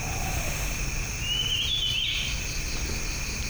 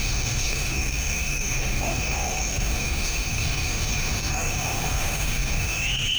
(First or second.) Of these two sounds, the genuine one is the first